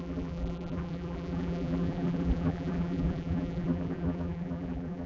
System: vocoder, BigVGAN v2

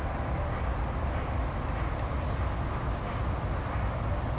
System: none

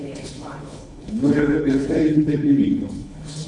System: codec, HILCodec